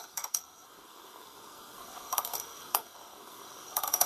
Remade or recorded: remade